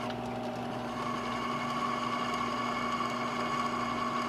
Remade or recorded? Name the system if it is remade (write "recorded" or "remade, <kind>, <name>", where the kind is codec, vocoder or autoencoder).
recorded